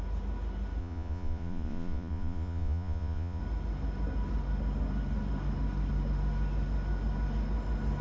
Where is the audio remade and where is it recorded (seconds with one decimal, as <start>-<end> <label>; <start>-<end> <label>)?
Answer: 0.0-0.8 recorded; 0.8-3.4 remade; 3.4-8.0 recorded

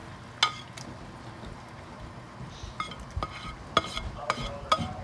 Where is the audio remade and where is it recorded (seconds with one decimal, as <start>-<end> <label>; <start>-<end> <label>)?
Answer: 0.0-5.0 recorded

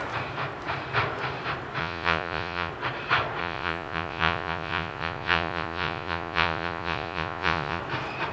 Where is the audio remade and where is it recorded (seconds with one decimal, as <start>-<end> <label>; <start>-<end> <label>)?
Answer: 0.0-1.8 recorded; 1.8-2.7 remade; 2.7-3.4 recorded; 3.4-7.8 remade; 7.8-8.3 recorded

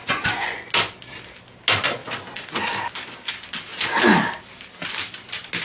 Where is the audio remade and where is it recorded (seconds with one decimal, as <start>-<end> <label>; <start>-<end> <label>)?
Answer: 0.0-0.7 remade; 0.7-5.6 recorded

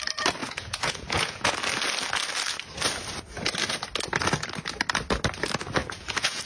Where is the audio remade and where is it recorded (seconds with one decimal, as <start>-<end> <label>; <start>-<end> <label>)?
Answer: 0.0-0.4 recorded; 0.4-1.5 remade; 1.5-5.8 recorded; 5.8-6.5 remade

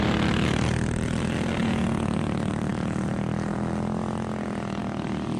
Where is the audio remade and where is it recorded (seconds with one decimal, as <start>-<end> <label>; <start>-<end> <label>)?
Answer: 0.0-1.6 recorded; 1.6-2.2 remade; 2.2-5.4 recorded

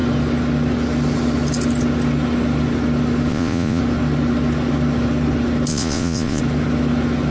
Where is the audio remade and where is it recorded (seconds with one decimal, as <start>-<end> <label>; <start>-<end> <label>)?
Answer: 0.0-3.3 recorded; 3.3-3.8 remade; 3.8-5.7 recorded; 5.7-6.4 remade; 6.4-7.3 recorded